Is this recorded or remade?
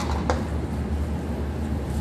recorded